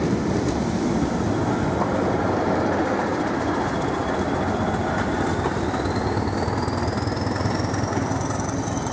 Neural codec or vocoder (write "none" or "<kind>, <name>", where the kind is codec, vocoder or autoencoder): none